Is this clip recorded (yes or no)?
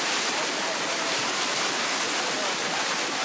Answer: yes